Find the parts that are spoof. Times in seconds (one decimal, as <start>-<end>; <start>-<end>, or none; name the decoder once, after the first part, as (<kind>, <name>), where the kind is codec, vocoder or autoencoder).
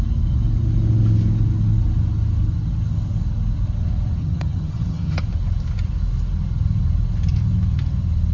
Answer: 4.2-5.2 (vocoder, HiFi-GAN)